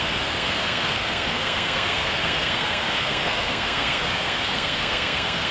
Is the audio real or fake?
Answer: fake